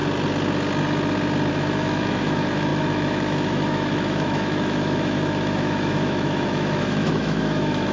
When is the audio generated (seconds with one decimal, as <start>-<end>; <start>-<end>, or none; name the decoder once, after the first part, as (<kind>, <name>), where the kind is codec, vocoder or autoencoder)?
1.5-7.9 (autoencoder, DAC-VAE)